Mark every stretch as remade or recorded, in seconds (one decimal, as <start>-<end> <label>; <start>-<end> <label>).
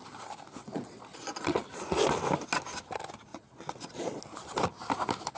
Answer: 0.0-0.6 recorded; 0.6-1.6 remade; 1.6-3.3 recorded; 3.3-4.2 remade; 4.2-5.4 recorded